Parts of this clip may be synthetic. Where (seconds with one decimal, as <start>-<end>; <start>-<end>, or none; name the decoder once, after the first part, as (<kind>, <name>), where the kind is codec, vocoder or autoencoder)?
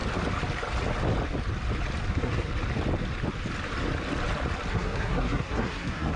2.1-2.5 (codec, SNAC); 4.7-6.2